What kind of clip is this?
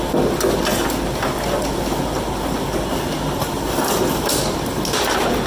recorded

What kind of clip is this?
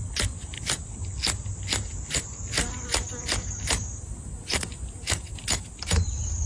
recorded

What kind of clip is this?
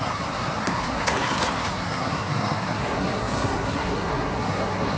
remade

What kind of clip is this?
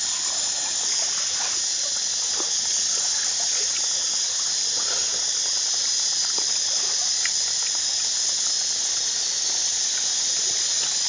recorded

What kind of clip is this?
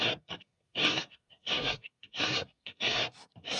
remade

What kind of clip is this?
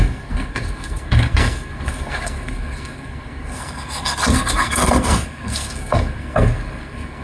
remade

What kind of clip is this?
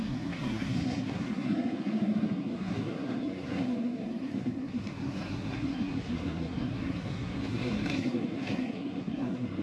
remade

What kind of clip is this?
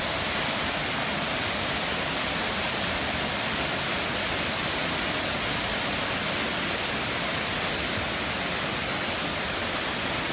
recorded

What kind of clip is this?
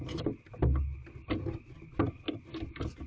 recorded